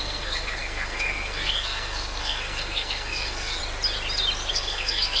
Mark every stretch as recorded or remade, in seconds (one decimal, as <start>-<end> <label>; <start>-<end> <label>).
0.0-3.6 remade; 3.6-4.5 recorded; 4.5-5.2 remade